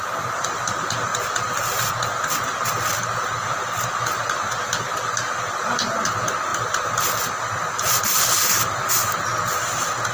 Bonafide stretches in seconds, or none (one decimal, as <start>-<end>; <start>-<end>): 0.0-1.1; 1.9-6.5; 7.2-10.1